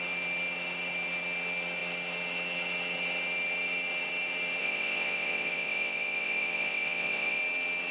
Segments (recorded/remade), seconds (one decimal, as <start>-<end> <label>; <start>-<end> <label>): 0.0-4.6 recorded; 4.6-7.4 remade; 7.4-7.9 recorded

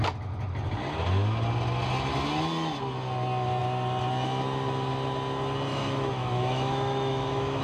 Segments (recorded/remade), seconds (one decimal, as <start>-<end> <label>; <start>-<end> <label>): 0.0-5.7 recorded; 5.7-7.6 remade

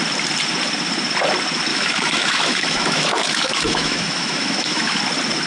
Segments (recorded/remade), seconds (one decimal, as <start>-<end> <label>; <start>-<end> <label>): 0.0-1.7 recorded; 1.7-5.0 remade; 5.0-5.5 recorded